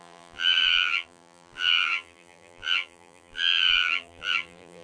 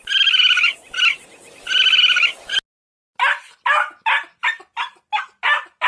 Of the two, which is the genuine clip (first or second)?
second